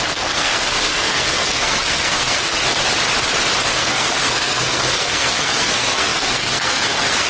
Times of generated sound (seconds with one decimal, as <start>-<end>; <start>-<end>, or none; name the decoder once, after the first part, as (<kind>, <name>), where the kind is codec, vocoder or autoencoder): 0.0-2.5 (codec, SNAC); 3.8-7.3